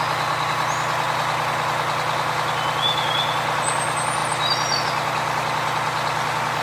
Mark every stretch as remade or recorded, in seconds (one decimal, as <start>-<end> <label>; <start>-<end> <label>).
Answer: 0.0-6.6 recorded